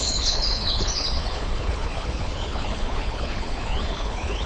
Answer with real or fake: fake